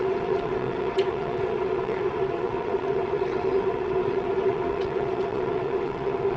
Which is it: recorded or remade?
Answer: remade